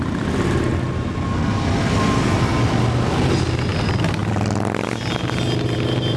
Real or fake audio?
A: real